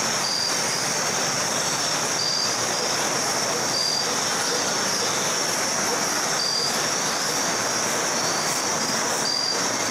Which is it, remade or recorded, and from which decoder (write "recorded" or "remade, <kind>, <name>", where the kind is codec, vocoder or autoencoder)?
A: recorded